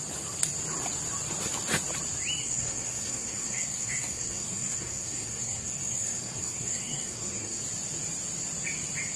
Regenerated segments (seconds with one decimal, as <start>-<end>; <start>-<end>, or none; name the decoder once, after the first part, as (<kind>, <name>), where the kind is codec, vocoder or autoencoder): 2.4-7.6 (codec, SNAC)